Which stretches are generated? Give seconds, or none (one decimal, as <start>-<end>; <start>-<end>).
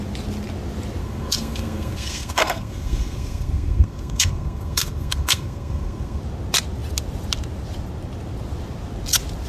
1.0-6.2